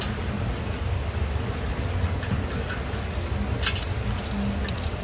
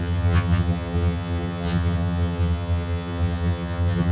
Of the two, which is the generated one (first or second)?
second